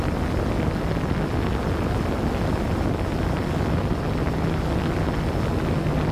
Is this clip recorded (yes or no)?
yes